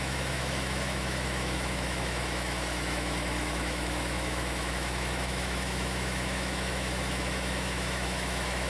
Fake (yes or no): yes